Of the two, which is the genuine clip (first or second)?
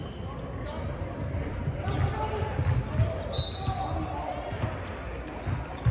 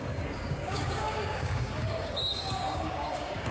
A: first